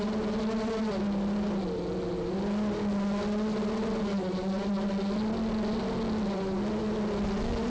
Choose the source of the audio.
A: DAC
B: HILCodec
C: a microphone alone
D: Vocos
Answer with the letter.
C